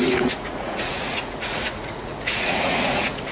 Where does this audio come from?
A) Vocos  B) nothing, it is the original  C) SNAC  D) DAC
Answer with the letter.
A